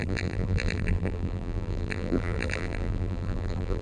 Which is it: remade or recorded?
remade